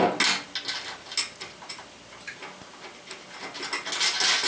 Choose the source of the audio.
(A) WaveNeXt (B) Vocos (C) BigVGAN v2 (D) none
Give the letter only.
D